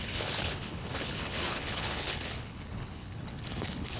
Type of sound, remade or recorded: remade